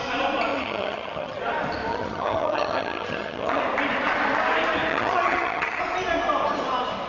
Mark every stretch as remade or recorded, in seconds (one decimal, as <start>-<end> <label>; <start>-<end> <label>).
0.0-0.5 recorded; 0.5-1.4 remade; 1.4-1.9 recorded; 1.9-3.6 remade; 3.6-4.9 recorded; 4.9-5.8 remade; 5.8-7.1 recorded